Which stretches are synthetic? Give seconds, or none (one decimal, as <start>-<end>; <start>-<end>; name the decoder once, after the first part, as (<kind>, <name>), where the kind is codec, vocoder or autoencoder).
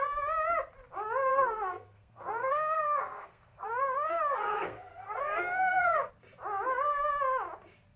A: 1.3-6.1 (codec, SNAC)